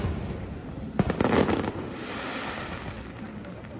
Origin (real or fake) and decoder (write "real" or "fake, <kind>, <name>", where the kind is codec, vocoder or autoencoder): real